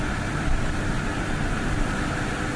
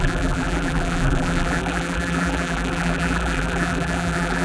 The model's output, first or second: second